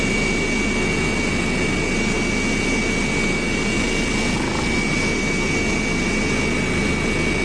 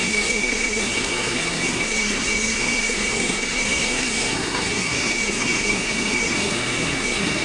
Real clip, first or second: first